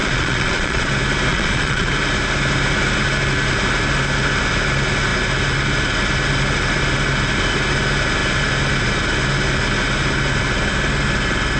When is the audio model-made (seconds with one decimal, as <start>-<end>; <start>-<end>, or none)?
0.0-0.9; 1.3-1.9

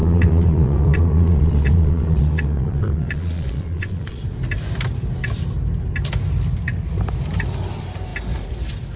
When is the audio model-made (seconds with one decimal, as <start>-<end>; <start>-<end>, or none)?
0.0-4.2

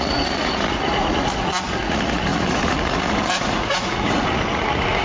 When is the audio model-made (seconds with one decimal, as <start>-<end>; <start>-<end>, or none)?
0.0-5.0

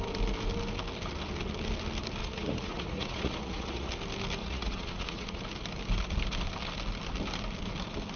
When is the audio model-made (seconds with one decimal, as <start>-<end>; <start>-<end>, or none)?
2.2-3.9; 4.4-5.4

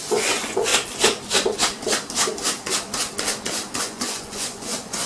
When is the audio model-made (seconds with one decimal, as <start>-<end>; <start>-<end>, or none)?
0.0-0.7; 3.8-5.1

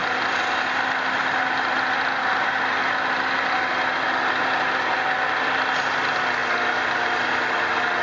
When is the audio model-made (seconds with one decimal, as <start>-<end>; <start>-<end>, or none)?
none

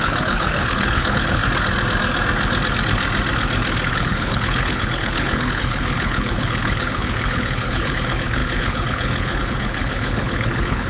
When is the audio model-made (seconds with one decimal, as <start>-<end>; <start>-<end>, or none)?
0.0-1.4; 3.9-10.9